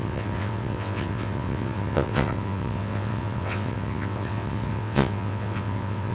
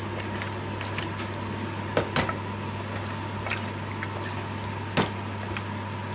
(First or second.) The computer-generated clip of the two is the first